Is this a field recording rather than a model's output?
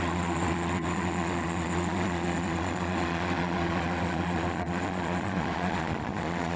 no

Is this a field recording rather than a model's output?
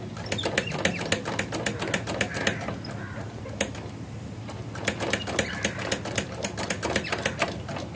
yes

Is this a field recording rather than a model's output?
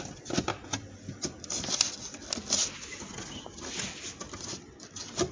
yes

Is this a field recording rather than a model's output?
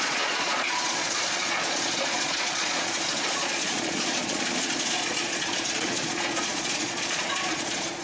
no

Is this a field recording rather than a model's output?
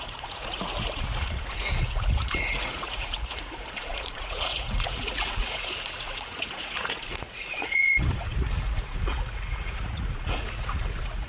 no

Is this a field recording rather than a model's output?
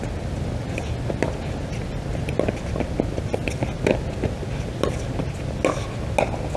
yes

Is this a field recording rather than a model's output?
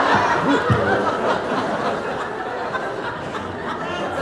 yes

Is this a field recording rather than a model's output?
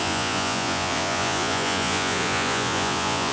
no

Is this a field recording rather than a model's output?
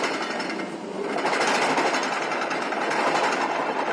yes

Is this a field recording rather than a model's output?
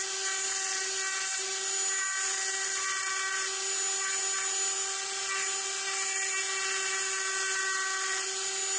yes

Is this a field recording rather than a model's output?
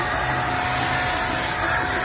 yes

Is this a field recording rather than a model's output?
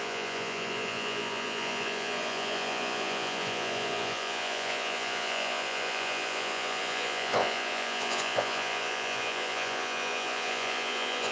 no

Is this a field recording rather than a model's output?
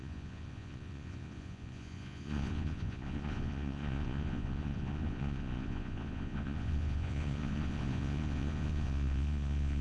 no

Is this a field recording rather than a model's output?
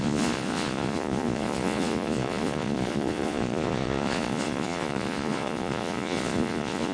no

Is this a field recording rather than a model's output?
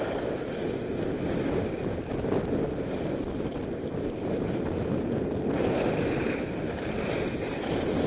yes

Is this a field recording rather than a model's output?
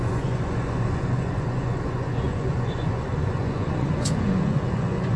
no